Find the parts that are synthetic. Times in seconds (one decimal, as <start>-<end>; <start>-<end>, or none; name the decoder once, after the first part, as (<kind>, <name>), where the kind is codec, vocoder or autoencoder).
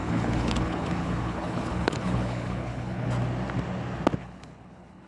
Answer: 0.0-3.1 (codec, HILCodec); 4.2-5.1